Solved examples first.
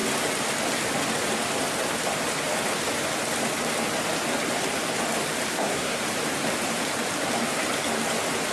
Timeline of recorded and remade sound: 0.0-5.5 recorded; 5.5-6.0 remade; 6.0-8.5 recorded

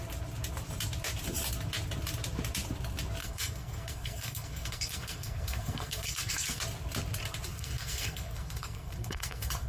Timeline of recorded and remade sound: 0.0-3.2 recorded; 3.2-6.6 remade; 6.6-7.5 recorded; 7.5-9.7 remade

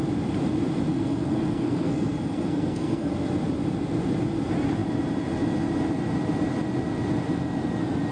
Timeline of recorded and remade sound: 0.0-0.9 recorded; 0.9-3.1 remade; 3.1-8.1 recorded

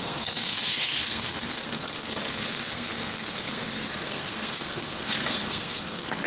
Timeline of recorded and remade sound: 0.0-6.3 remade

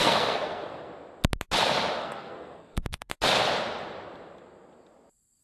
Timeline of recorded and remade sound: 0.0-0.9 remade; 0.9-2.0 recorded; 2.0-3.1 remade; 3.1-5.4 recorded

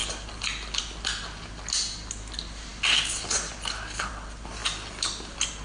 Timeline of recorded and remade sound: 0.0-5.6 recorded

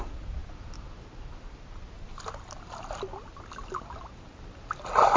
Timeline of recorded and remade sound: 0.0-5.2 recorded